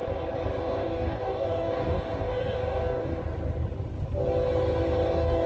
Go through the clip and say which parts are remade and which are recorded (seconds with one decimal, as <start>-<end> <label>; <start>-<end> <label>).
0.0-0.6 recorded; 0.6-3.2 remade; 3.2-5.1 recorded; 5.1-5.5 remade